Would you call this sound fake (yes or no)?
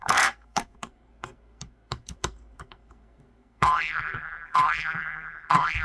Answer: yes